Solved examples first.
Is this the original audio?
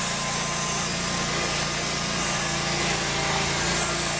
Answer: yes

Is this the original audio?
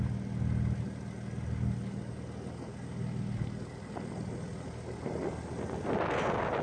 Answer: yes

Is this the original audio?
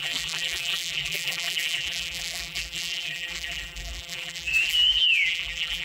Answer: no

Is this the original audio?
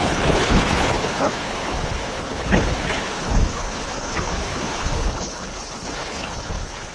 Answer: no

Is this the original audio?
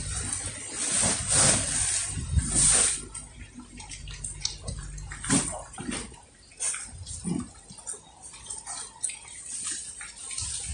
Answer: yes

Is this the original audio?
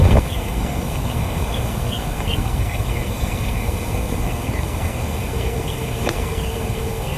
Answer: no